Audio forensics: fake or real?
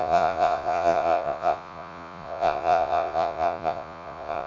fake